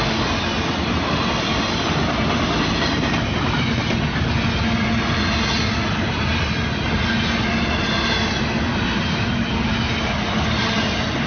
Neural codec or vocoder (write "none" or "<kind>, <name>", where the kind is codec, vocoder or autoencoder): none